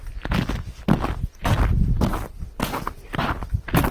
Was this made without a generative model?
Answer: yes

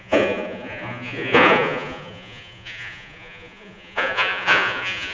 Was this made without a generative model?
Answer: no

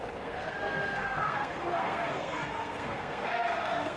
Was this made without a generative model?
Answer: no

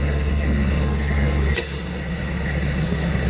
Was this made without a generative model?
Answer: no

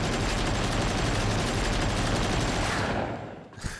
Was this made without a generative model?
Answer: yes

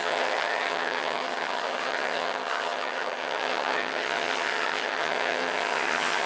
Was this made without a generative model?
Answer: no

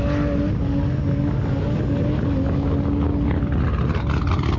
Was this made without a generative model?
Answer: yes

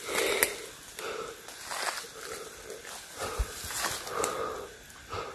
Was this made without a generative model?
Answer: yes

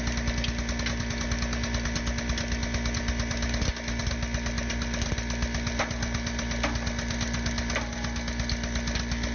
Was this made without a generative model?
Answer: yes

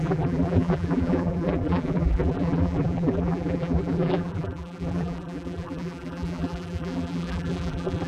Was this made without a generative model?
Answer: no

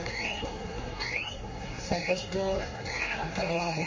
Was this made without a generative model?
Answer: no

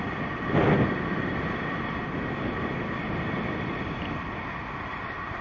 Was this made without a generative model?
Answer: yes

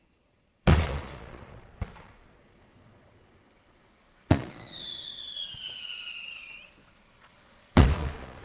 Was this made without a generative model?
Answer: no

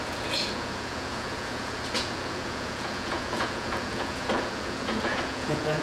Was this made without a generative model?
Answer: no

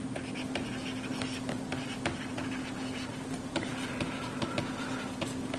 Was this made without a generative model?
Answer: yes